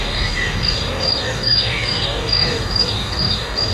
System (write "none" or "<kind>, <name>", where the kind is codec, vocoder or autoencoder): codec, DAC